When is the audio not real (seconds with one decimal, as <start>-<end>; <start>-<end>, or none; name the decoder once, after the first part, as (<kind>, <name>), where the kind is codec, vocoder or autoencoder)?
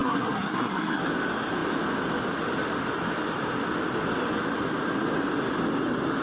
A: 0.0-1.0 (codec, SNAC)